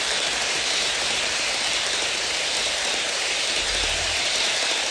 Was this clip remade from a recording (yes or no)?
yes